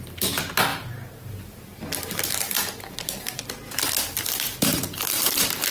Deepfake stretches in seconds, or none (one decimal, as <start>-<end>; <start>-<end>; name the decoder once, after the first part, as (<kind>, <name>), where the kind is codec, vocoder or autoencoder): 0.7-3.5 (vocoder, BigVGAN v2); 4.5-5.7